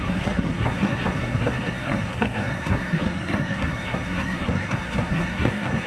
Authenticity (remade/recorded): remade